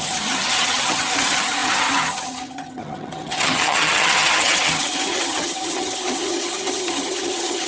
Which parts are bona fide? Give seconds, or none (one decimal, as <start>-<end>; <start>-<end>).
none